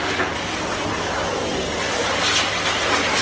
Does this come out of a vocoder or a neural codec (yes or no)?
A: no